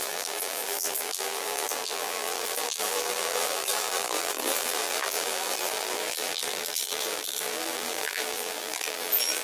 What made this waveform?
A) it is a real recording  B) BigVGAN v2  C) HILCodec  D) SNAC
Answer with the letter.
B